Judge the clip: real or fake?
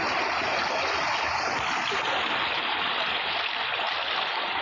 real